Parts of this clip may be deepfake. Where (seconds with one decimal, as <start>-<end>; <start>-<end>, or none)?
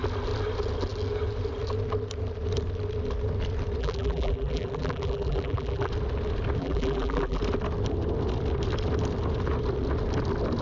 3.8-5.9; 6.6-7.4